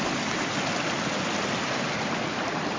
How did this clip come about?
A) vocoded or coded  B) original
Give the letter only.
B